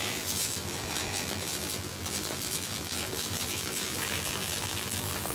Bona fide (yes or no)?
no